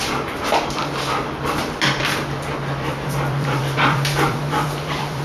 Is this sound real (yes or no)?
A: no